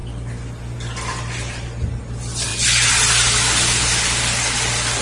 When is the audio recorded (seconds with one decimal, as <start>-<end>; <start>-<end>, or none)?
0.0-5.0